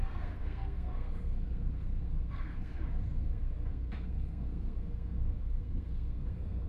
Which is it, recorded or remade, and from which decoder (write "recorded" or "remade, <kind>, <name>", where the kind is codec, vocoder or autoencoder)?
remade, codec, SNAC